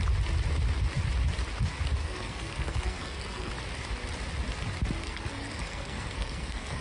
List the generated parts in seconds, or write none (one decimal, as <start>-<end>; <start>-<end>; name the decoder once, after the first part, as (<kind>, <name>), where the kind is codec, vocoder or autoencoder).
2.0-3.5 (codec, SNAC); 5.0-6.8